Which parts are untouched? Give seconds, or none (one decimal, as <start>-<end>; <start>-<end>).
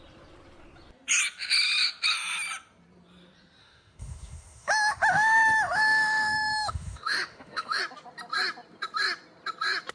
0.0-3.6; 7.8-9.9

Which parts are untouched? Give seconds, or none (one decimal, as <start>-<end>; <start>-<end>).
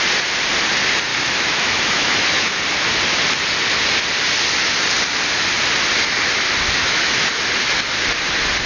0.0-1.1; 2.6-6.8; 7.3-8.7